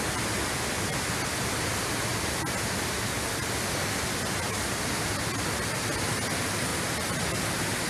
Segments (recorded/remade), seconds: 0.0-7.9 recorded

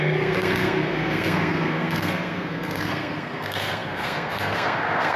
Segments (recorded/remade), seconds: 0.0-5.2 remade

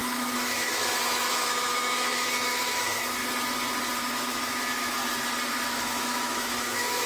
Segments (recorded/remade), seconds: 0.0-3.2 remade; 3.2-4.1 recorded; 4.1-5.0 remade; 5.0-5.5 recorded; 5.5-7.1 remade

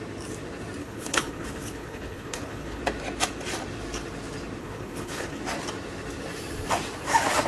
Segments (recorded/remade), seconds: 0.0-0.8 recorded; 0.8-2.8 remade; 2.8-4.6 recorded; 4.6-5.4 remade; 5.4-7.5 recorded

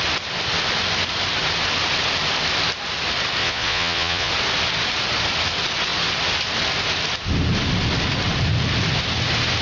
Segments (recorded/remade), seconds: 0.0-3.4 recorded; 3.4-4.3 remade; 4.3-9.6 recorded

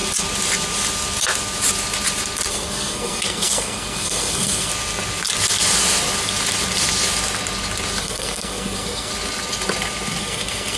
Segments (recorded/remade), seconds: 0.0-2.5 recorded; 2.5-4.7 remade; 4.7-8.0 recorded; 8.0-9.1 remade; 9.1-10.2 recorded; 10.2-10.8 remade